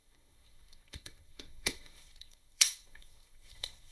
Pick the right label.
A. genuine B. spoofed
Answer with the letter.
B